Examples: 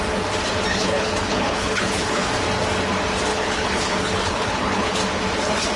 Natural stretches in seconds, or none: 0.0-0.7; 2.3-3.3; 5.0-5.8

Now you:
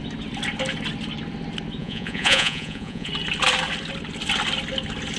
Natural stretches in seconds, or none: 0.0-1.8; 3.1-5.2